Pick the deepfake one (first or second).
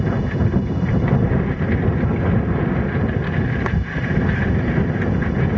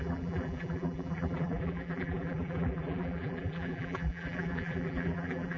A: second